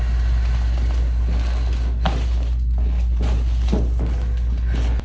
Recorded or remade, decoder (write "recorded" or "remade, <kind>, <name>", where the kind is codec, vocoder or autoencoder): recorded